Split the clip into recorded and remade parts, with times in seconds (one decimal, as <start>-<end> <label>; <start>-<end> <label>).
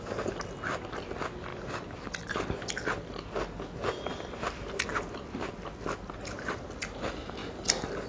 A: 0.0-8.1 recorded